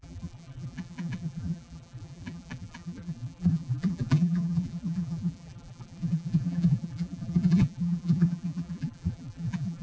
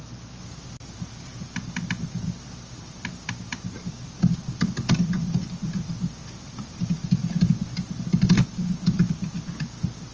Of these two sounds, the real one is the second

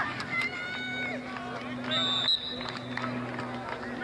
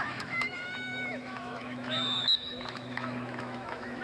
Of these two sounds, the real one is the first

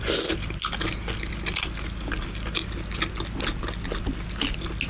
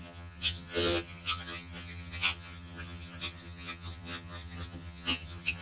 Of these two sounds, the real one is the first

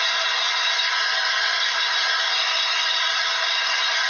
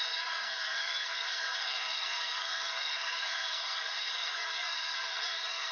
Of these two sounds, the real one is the first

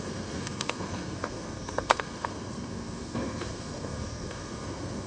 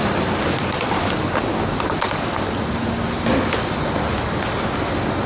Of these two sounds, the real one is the second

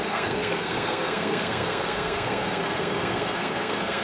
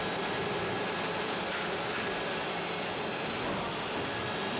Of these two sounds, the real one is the second